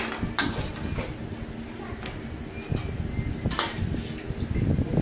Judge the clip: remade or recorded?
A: recorded